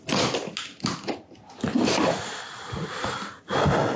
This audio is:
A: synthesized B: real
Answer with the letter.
B